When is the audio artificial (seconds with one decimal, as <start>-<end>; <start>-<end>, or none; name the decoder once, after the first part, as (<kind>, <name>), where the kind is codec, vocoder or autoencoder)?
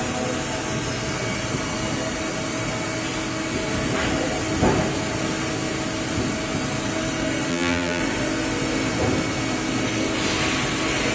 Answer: 7.5-8.0 (vocoder, BigVGAN v2)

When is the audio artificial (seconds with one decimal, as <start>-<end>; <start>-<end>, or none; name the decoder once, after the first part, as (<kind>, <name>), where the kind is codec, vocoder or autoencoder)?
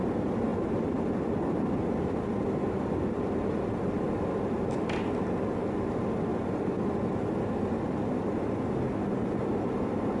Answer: none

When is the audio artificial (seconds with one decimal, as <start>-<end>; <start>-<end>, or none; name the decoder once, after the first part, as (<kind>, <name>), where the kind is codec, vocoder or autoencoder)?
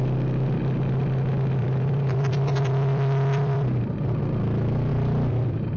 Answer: 1.6-4.2 (vocoder, BigVGAN v2); 4.9-5.8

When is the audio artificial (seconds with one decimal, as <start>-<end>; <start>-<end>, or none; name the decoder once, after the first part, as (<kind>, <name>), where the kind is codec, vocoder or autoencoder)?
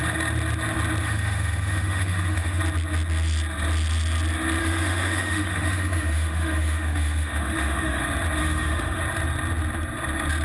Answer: 1.0-2.6 (autoencoder, DAC-VAE); 4.6-8.0; 8.4-9.0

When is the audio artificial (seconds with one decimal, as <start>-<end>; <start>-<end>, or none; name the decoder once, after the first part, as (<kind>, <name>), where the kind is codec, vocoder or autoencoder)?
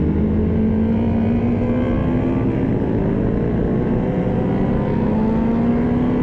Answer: none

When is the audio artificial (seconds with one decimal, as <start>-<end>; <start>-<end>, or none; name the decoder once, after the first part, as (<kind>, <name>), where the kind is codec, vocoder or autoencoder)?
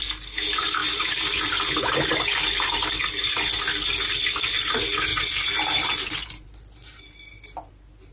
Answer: 0.8-1.5 (vocoder, BigVGAN v2); 5.1-7.0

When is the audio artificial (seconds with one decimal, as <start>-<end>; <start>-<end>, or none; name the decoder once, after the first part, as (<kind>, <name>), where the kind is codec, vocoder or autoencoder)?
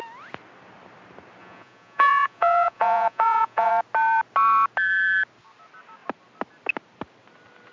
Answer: 1.4-3.7 (vocoder, Vocos)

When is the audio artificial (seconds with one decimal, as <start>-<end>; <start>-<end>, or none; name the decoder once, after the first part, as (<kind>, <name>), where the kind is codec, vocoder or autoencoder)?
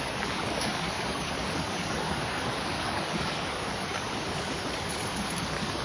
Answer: 0.0-5.8 (codec, DAC)